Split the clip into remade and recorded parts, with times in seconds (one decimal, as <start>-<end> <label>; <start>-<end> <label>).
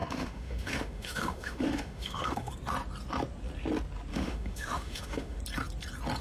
0.0-2.5 remade; 2.5-4.1 recorded; 4.1-5.4 remade; 5.4-6.2 recorded